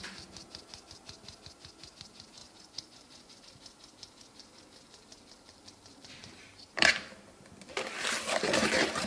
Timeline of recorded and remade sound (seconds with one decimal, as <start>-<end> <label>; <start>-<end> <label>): 0.0-2.4 recorded; 2.4-3.4 remade; 3.4-9.1 recorded